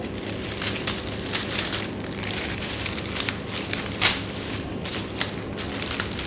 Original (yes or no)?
yes